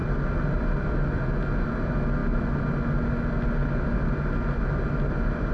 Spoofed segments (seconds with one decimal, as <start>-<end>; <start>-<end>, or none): none